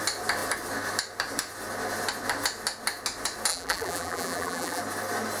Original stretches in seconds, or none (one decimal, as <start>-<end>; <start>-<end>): 0.0-3.5; 4.8-5.4